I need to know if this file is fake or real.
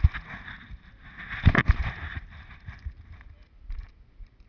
real